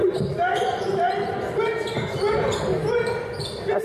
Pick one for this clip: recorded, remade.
recorded